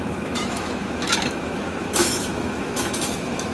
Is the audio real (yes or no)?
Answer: no